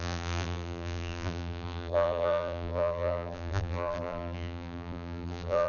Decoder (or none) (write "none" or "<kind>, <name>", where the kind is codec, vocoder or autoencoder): vocoder, BigVGAN v2